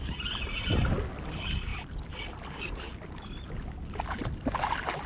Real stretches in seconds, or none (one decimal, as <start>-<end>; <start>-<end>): 0.0-5.1